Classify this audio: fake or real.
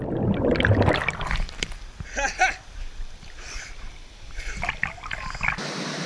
real